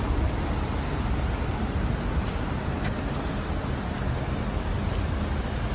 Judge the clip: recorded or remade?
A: recorded